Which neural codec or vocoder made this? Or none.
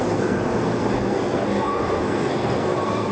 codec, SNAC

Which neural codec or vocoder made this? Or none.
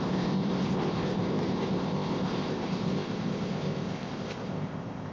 codec, ZipCodec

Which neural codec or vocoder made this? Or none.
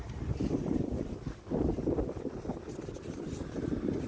none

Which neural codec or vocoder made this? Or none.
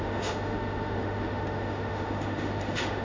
autoencoder, DAC-VAE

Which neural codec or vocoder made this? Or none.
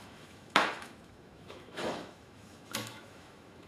autoencoder, DAC-VAE